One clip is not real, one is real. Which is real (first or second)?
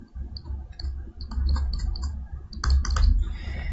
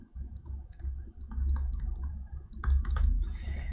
first